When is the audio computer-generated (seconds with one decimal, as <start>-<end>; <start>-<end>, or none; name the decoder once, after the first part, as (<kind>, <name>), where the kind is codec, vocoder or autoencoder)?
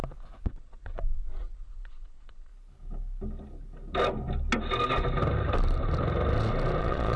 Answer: 0.5-2.5 (vocoder, Vocos); 6.8-7.2